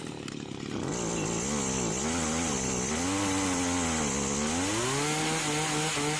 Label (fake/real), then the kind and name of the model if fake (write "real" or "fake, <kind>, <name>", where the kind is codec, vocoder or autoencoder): real